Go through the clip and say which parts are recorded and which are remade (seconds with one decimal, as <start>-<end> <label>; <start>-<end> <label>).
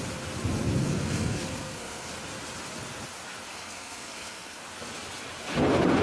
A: 0.0-0.8 recorded; 0.8-2.1 remade; 2.1-3.5 recorded; 3.5-4.6 remade; 4.6-6.0 recorded